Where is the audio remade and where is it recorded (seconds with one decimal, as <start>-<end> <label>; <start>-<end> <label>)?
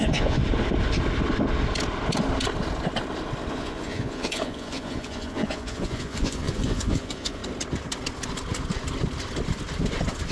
0.0-0.4 remade; 0.4-3.5 recorded; 3.5-7.4 remade; 7.4-10.3 recorded